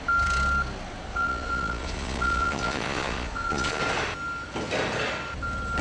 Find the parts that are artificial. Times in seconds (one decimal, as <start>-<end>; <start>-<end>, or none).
1.1-3.8